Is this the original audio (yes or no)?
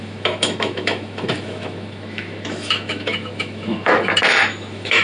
no